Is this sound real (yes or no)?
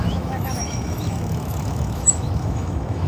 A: no